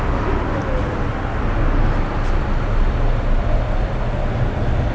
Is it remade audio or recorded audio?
recorded